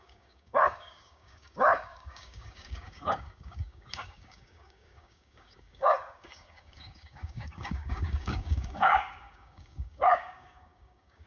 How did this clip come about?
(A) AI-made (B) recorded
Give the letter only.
A